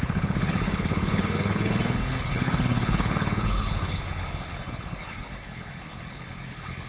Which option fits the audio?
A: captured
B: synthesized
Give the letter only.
B